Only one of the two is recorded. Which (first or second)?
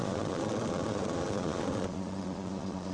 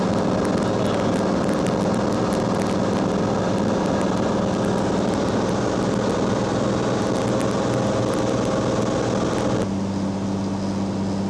second